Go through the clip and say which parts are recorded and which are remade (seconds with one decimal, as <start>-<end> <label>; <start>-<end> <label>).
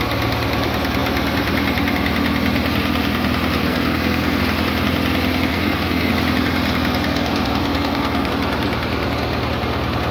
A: 0.0-3.6 recorded; 3.6-4.4 remade; 4.4-5.5 recorded; 5.5-6.1 remade; 6.1-7.1 recorded; 7.1-8.3 remade; 8.3-10.1 recorded